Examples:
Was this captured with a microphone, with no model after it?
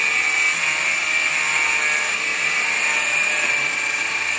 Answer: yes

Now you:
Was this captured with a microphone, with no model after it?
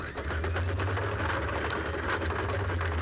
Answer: yes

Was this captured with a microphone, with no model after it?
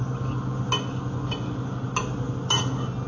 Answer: yes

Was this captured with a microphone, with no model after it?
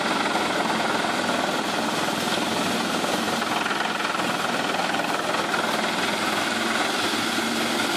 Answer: yes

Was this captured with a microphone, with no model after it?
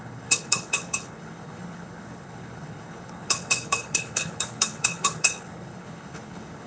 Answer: no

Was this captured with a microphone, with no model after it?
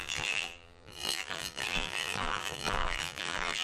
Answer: no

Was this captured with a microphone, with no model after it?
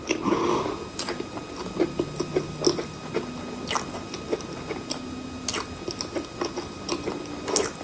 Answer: yes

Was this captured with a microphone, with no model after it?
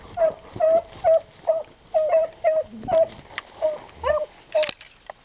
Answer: yes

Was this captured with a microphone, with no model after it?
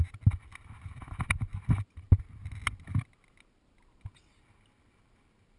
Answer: yes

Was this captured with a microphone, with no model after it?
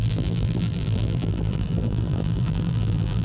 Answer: no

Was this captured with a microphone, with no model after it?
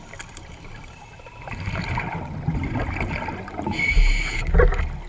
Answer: yes